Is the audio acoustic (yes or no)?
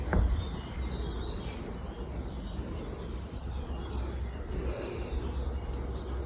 yes